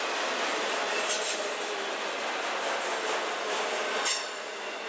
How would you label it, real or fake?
real